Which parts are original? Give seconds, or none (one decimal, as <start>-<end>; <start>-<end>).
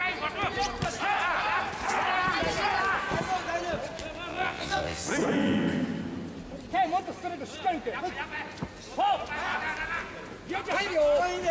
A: 0.0-4.3; 5.1-11.5